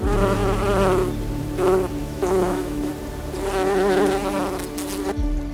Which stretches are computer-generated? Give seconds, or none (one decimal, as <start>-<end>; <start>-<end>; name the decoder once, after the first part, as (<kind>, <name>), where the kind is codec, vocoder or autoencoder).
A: 2.0-2.9 (autoencoder, DAC-VAE)